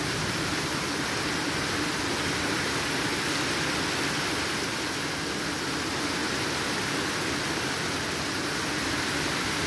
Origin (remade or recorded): recorded